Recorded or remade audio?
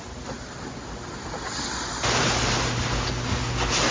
recorded